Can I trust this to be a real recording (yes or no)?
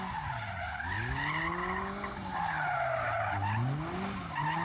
yes